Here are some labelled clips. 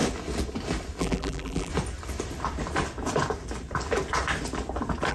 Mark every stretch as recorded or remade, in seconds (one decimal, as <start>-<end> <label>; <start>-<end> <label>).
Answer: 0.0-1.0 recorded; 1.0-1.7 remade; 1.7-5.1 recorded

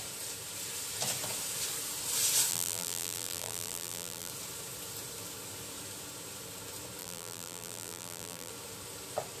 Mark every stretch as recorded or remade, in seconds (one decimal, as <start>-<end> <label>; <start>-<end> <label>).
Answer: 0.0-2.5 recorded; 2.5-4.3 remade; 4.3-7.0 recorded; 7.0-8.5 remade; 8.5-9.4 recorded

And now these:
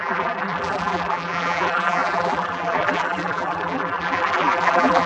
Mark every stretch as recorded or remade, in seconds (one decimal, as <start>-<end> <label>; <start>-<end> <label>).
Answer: 0.0-5.1 remade